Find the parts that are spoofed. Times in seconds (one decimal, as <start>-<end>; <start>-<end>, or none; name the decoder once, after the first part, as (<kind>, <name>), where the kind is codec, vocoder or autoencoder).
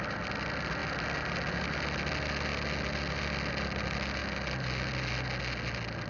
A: none